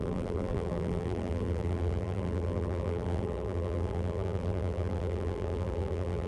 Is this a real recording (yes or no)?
no